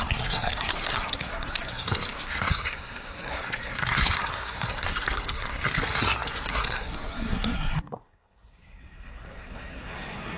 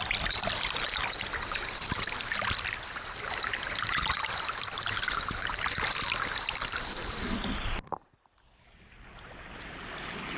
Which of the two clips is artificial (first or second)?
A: first